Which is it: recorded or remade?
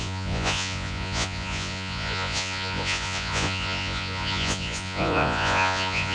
remade